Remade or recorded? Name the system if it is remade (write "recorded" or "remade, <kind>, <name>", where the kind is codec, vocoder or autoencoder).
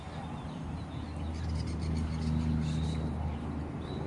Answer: recorded